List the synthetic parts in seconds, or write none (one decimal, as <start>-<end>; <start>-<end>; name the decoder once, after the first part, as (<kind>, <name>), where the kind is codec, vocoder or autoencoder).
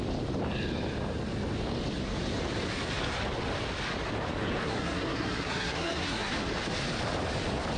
4.6-6.3 (codec, SNAC)